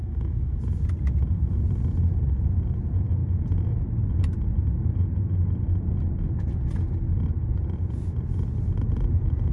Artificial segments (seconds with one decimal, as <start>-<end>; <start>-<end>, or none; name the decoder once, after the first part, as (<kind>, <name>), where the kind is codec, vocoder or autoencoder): 0.0-0.6 (autoencoder, DAC-VAE)